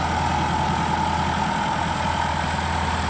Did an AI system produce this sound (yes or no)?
no